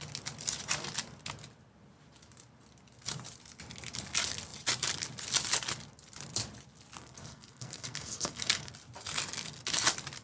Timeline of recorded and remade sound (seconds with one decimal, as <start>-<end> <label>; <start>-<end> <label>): 0.0-7.0 recorded; 7.0-8.7 remade; 8.7-10.2 recorded